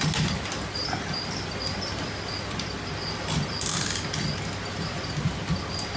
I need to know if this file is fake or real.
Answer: real